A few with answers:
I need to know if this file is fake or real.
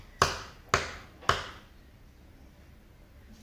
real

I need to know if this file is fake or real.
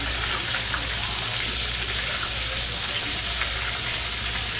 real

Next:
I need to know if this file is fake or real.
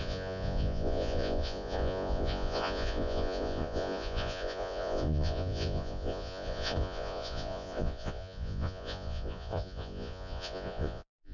fake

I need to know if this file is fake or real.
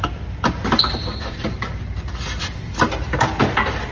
real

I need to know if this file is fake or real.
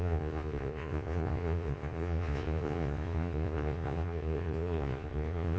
fake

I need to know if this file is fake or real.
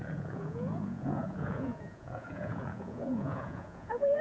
fake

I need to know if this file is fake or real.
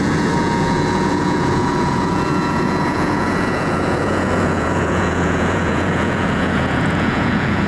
fake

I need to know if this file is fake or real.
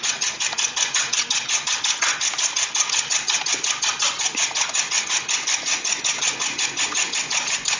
fake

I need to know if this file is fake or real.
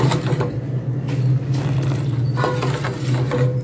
real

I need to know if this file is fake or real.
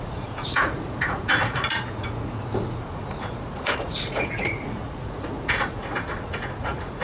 fake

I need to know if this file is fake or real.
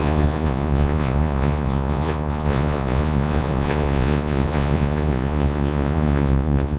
fake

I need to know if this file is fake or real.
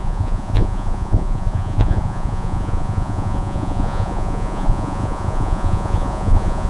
fake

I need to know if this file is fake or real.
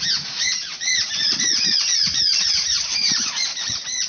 fake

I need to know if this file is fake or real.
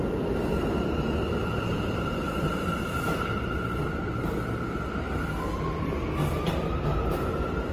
real